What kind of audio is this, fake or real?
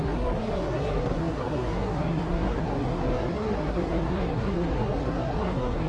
fake